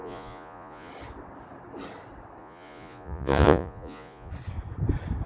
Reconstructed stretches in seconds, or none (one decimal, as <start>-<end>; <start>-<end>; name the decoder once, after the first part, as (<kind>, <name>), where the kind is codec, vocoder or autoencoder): 0.0-0.9 (vocoder, Vocos); 2.4-4.3

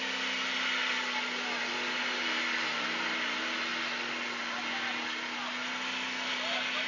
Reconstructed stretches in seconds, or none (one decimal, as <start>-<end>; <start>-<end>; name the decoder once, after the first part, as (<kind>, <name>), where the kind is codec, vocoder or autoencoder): none

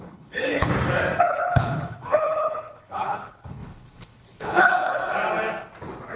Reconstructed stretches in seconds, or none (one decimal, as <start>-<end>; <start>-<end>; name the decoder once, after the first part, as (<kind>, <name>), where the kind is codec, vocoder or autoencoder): 0.0-0.7 (codec, HILCodec); 1.2-5.0